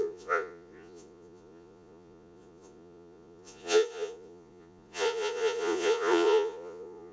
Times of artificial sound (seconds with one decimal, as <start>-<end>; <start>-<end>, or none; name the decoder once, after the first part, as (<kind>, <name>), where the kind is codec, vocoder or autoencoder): 0.0-7.1 (vocoder, Vocos)